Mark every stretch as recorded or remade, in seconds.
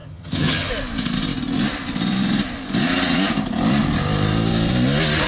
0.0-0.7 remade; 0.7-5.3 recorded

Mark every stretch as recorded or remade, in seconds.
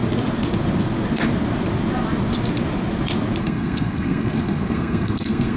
0.0-3.4 recorded; 3.4-5.6 remade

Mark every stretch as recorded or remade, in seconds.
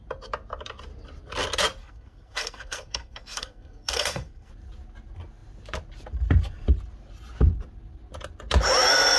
0.0-1.8 recorded; 1.8-4.5 remade; 4.5-9.2 recorded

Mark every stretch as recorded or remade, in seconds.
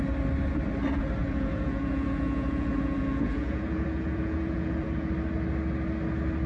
0.0-1.2 recorded; 1.2-5.1 remade; 5.1-6.5 recorded